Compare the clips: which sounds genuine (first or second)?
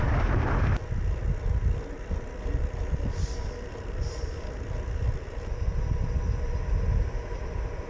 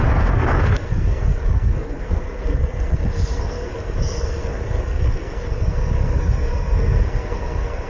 first